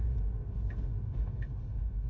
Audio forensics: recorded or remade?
remade